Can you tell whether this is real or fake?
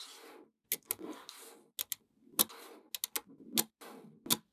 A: real